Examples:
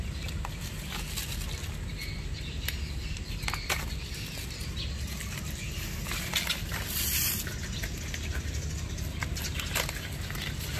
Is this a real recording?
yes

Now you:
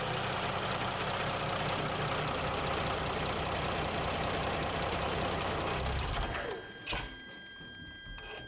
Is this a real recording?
yes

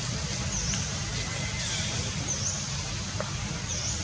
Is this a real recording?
yes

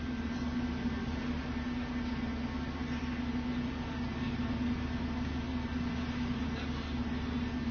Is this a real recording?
yes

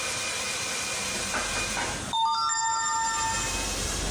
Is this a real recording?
yes